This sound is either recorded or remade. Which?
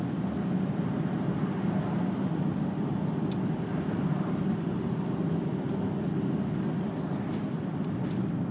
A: recorded